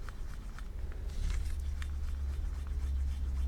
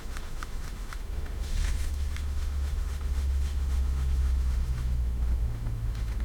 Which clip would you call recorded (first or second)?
first